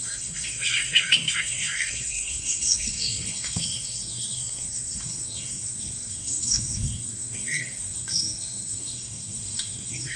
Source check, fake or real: fake